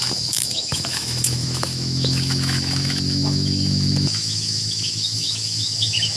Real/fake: fake